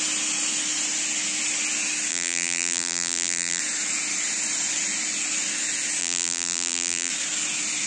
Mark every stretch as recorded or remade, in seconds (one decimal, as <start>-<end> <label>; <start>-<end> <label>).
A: 0.0-2.1 recorded; 2.1-3.6 remade; 3.6-6.0 recorded; 6.0-7.1 remade; 7.1-7.9 recorded